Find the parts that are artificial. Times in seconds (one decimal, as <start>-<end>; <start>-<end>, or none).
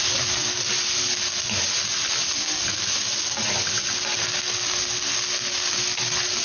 none